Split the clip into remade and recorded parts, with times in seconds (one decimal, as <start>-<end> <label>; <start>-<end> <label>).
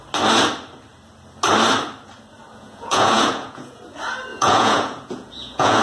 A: 0.0-2.6 recorded; 2.6-3.8 remade; 3.8-4.3 recorded; 4.3-5.8 remade